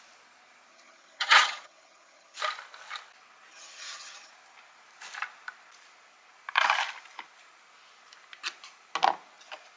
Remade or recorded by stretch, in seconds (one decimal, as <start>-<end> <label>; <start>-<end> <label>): 0.0-0.7 recorded; 0.7-2.4 remade; 2.4-3.5 recorded; 3.5-4.3 remade; 4.3-9.8 recorded